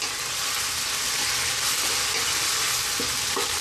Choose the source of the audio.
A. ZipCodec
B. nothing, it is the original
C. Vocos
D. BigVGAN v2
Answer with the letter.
B